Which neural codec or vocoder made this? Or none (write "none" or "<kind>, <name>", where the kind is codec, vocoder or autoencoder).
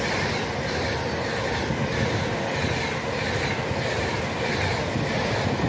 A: none